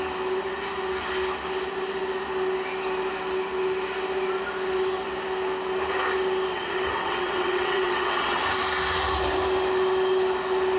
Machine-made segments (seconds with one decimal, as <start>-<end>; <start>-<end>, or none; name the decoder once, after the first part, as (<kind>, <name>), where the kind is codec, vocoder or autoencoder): 6.5-8.4 (vocoder, WaveNeXt)